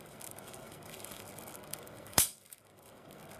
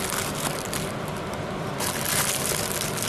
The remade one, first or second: first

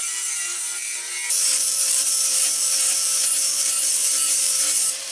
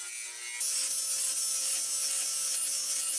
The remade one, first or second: first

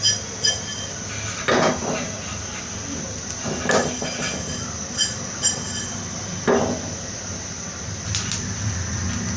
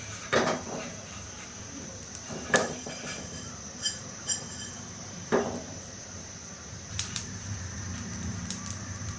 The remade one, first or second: second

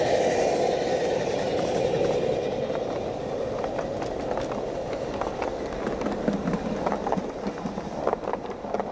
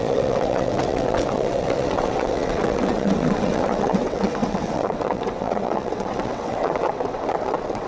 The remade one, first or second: second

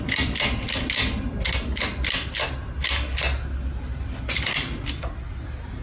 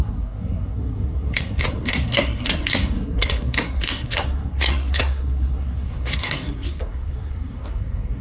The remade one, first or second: second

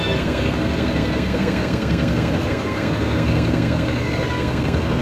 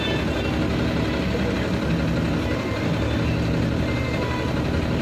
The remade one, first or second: first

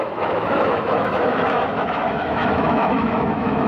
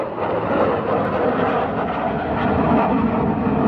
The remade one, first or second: first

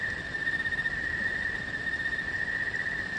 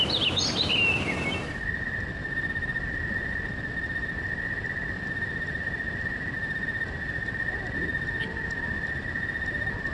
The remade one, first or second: first